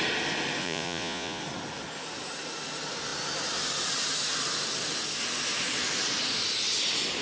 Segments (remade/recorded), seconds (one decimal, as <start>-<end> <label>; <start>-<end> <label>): 0.0-0.6 recorded; 0.6-1.4 remade; 1.4-7.2 recorded